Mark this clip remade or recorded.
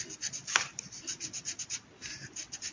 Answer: recorded